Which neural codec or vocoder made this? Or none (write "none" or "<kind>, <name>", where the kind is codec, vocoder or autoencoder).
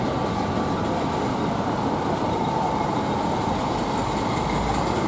none